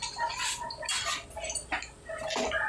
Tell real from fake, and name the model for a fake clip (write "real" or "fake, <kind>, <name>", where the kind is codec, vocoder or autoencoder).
real